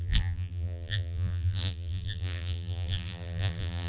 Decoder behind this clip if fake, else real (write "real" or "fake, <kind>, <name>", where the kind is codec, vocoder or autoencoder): fake, vocoder, BigVGAN v2